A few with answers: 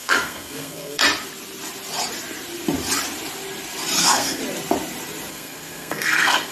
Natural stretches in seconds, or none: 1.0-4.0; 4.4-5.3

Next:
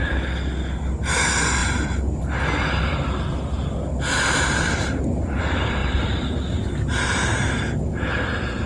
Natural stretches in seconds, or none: 0.0-1.6; 2.2-8.7

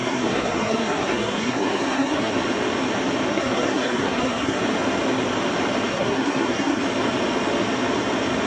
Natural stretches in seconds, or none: 2.3-3.3; 4.6-5.9; 6.8-8.5

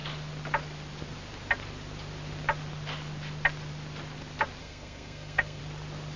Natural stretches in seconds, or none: 0.0-4.6; 5.6-6.2

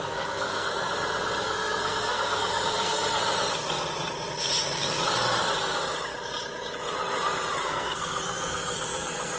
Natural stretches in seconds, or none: 0.9-1.4; 3.2-7.6

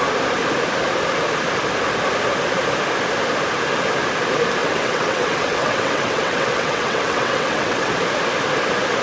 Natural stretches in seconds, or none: 0.0-4.6; 7.9-9.0